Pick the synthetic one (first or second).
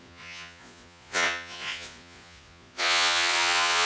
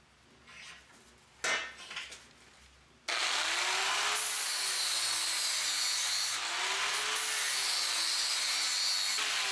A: first